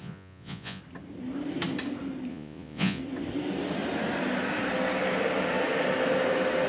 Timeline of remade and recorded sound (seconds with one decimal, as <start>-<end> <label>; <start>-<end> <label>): 0.0-0.8 remade; 0.8-2.3 recorded; 2.3-3.0 remade; 3.0-6.7 recorded